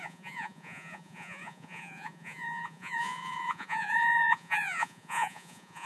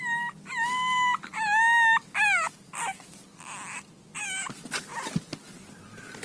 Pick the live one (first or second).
second